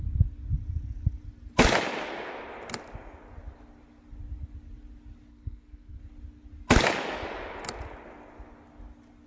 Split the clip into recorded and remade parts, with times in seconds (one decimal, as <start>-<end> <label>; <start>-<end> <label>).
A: 0.0-5.3 recorded; 5.3-6.0 remade; 6.0-9.3 recorded